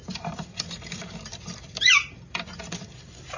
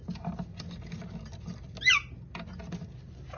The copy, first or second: first